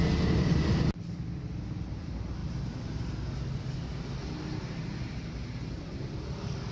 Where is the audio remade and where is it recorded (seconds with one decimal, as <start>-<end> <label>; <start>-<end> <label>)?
0.0-6.7 recorded